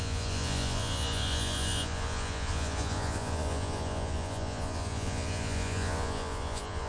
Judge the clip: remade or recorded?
remade